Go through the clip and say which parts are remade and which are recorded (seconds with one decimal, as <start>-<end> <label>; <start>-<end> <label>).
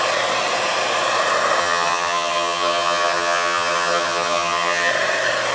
0.0-1.6 recorded; 1.6-4.9 remade; 4.9-5.5 recorded